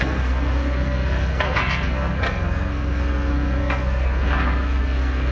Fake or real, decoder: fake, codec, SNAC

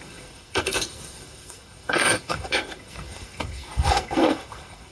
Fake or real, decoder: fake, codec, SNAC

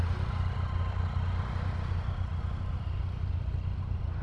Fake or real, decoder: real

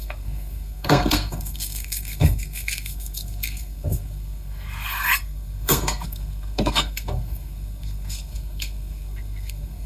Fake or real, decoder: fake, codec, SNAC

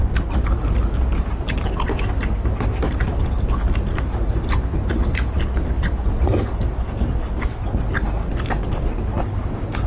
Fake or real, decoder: real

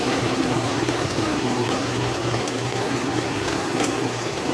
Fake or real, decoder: fake, codec, SNAC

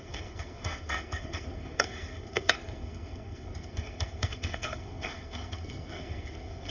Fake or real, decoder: fake, codec, SNAC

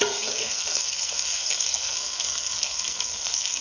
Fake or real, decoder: fake, codec, SNAC